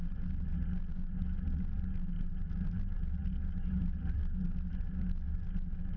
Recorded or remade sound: recorded